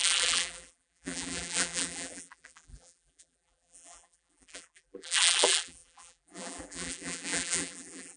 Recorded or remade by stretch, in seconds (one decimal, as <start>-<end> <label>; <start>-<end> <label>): 0.0-8.2 remade